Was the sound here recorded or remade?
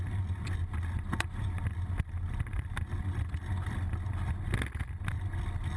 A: recorded